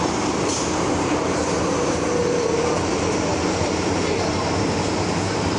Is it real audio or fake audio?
fake